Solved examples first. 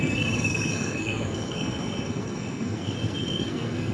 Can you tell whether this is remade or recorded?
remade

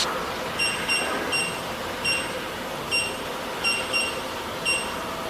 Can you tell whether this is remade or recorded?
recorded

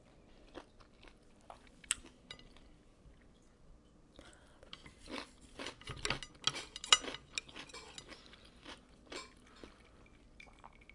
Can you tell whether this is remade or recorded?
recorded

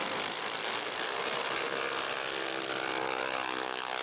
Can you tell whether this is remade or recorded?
recorded